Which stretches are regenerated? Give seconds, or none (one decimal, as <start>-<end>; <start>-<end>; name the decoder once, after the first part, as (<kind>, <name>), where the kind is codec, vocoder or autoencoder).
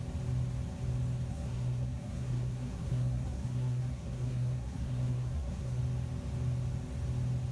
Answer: 1.3-5.8 (codec, SNAC)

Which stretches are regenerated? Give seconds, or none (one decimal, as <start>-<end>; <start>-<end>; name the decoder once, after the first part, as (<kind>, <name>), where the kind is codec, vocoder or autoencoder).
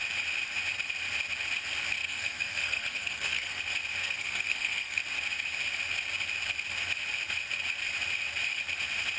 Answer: 2.0-3.6 (codec, SNAC); 4.0-5.0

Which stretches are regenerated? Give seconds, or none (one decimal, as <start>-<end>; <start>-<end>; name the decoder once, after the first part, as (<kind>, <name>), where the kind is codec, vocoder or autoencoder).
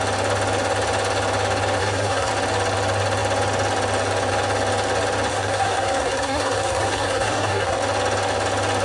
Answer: 1.8-2.3 (codec, SNAC); 5.3-7.8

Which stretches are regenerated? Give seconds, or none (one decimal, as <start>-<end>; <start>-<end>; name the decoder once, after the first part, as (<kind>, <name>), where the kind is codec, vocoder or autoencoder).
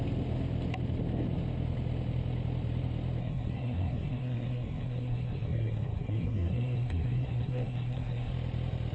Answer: 3.2-8.3 (codec, SNAC)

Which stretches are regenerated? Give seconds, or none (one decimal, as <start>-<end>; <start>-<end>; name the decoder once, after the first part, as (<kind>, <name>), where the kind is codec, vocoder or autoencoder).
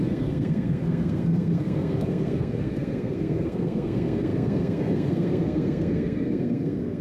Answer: 0.0-7.0 (codec, SNAC)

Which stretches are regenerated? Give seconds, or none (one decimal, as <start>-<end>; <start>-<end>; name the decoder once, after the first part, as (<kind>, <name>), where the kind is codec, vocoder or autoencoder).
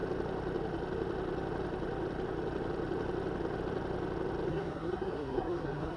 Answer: 4.5-6.0 (codec, SNAC)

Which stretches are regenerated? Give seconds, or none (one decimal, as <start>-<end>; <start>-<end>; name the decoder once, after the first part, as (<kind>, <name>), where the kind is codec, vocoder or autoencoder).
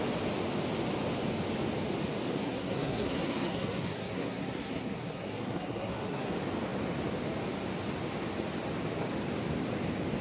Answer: 2.3-6.3 (codec, SNAC)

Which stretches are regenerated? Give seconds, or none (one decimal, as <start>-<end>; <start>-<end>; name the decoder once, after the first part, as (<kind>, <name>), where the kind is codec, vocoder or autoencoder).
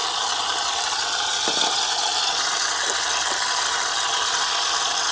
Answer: none